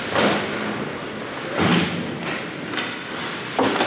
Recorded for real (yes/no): yes